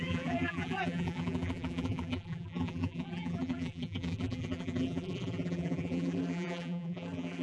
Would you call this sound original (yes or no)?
no